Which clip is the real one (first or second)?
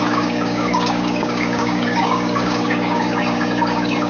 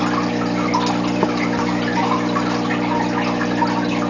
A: second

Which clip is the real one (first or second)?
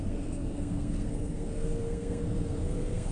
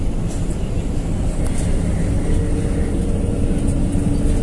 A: second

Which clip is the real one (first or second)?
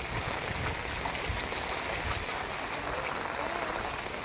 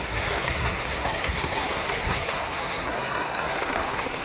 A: first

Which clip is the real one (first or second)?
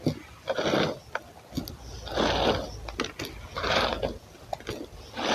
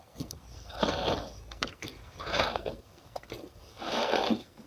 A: first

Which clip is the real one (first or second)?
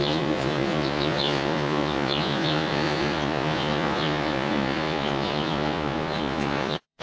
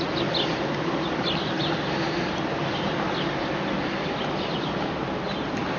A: second